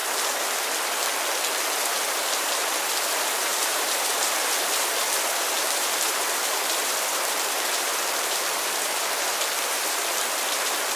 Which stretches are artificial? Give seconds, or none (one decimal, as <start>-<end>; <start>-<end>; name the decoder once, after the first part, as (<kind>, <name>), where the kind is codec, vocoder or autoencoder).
2.1-11.0 (vocoder, BigVGAN v2)